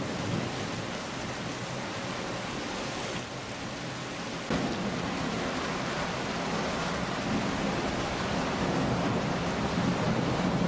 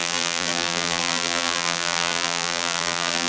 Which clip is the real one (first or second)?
first